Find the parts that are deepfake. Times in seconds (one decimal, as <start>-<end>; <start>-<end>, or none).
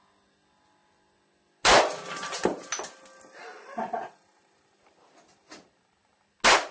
none